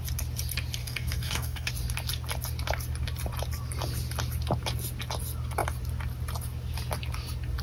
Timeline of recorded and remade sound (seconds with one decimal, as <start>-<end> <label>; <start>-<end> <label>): 0.0-0.8 recorded; 0.8-1.7 remade; 1.7-7.6 recorded